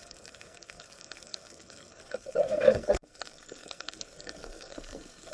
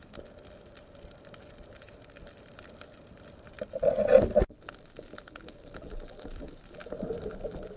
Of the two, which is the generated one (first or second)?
first